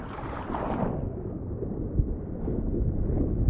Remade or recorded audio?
recorded